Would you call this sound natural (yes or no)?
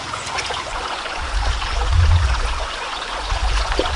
no